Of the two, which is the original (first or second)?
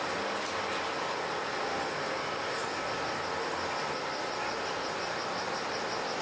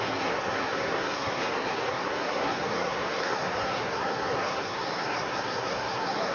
first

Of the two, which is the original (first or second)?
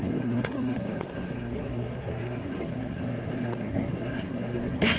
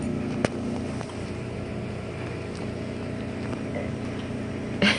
second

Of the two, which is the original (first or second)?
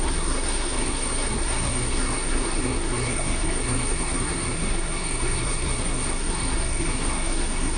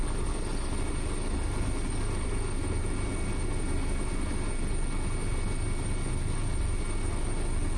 second